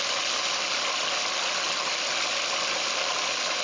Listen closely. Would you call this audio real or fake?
real